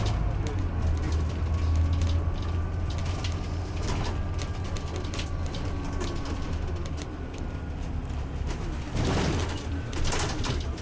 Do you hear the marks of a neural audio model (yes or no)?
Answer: no